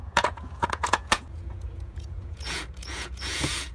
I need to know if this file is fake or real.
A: fake